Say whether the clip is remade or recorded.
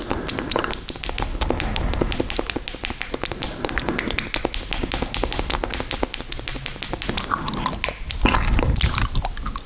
recorded